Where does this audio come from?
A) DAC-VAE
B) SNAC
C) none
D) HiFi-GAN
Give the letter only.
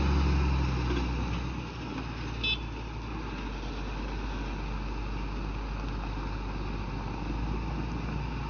C